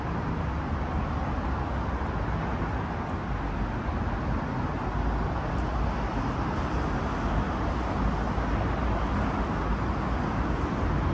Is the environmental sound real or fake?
real